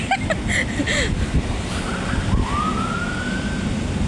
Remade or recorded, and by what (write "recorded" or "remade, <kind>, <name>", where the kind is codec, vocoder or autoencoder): recorded